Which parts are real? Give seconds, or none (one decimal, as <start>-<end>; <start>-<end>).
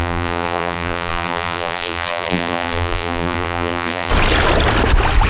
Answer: 4.1-5.3